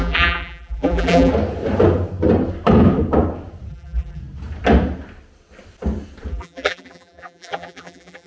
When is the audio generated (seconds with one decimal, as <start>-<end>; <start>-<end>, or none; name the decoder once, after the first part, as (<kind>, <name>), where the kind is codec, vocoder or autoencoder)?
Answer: 0.0-1.3 (vocoder, BigVGAN v2); 3.7-4.2; 6.3-8.3